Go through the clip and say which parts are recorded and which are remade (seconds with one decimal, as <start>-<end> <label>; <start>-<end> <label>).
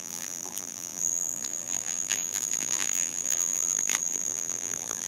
0.0-5.1 remade